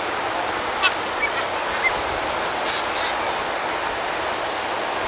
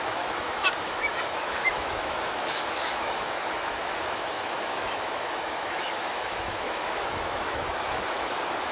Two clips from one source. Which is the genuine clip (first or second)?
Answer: first